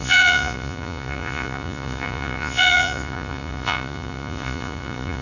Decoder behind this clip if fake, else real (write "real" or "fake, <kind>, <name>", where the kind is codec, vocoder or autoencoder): fake, vocoder, Vocos